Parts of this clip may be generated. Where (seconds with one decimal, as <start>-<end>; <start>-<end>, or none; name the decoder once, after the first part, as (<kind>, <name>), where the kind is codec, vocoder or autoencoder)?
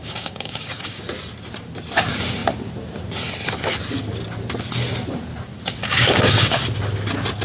0.0-1.0 (codec, DAC); 5.8-6.6